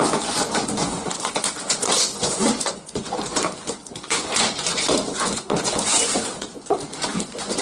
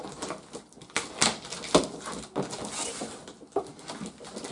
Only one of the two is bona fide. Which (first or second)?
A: second